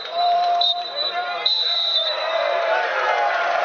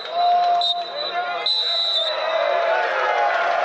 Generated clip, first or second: first